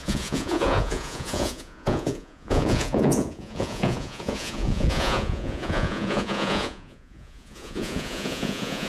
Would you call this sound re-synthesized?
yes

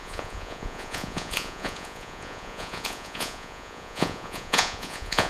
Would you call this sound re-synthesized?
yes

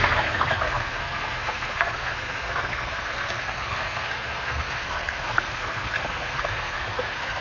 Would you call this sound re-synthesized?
yes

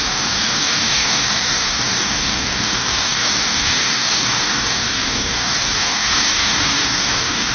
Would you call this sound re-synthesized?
yes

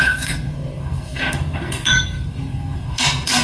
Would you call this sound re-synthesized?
yes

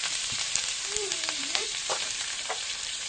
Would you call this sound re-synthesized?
yes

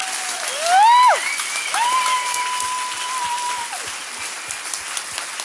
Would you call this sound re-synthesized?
no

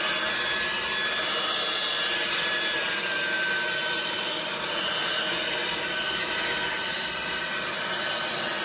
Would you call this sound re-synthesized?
no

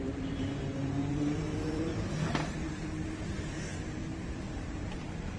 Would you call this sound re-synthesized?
yes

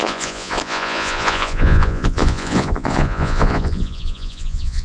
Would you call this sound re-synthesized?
yes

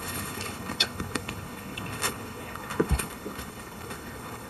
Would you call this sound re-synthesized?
yes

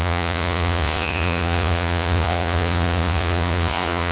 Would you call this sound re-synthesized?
yes